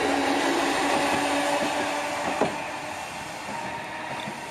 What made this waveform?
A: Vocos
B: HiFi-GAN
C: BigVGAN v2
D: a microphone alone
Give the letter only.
D